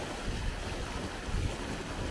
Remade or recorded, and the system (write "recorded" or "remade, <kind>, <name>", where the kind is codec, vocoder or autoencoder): recorded